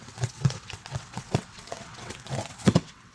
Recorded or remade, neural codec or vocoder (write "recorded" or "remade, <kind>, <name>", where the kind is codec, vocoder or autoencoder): remade, vocoder, WaveNeXt